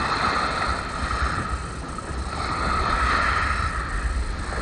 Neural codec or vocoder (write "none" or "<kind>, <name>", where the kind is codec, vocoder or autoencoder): none